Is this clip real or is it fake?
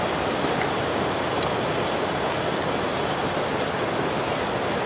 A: real